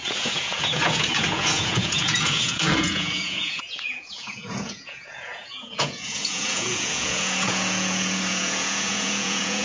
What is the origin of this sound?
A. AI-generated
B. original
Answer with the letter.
A